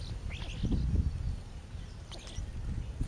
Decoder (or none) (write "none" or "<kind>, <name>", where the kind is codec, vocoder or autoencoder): none